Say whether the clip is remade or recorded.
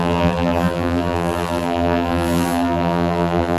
remade